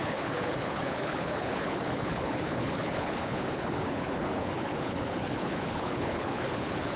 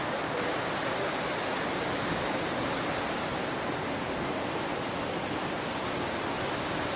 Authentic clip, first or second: second